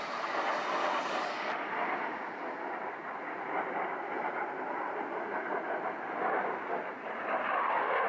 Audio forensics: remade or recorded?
recorded